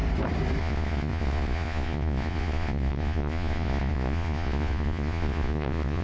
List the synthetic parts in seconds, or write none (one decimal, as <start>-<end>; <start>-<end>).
0.6-6.0